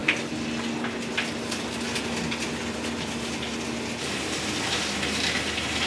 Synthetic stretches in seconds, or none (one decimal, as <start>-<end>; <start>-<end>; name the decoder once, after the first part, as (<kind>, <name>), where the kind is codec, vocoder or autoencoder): none